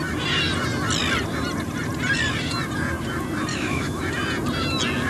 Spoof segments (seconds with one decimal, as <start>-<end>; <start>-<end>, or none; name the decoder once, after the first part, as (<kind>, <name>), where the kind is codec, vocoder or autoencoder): 3.5-4.0 (autoencoder, DAC-VAE)